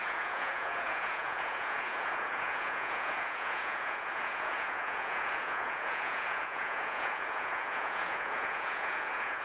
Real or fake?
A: fake